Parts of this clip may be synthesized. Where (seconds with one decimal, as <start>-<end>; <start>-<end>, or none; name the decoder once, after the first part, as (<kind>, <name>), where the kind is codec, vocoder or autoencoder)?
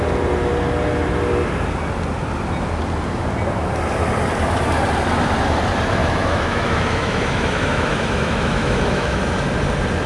6.0-9.2 (autoencoder, DAC-VAE)